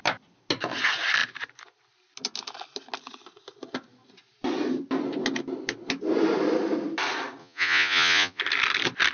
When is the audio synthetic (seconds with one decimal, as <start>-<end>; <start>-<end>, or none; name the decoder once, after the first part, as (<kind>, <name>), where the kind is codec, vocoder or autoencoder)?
7.4-8.4 (vocoder, Vocos)